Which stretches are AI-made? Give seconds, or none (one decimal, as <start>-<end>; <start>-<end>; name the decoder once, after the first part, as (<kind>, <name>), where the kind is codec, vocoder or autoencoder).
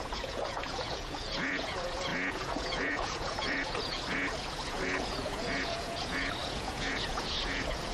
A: 0.0-7.9 (vocoder, Vocos)